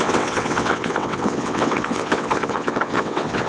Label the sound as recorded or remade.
remade